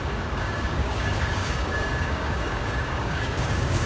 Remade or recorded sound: remade